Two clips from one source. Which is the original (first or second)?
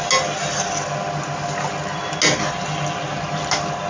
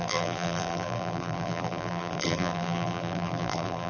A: first